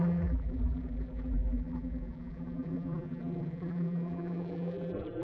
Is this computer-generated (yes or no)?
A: yes